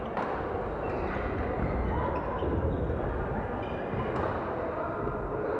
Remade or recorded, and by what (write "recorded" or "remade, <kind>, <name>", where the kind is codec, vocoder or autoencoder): recorded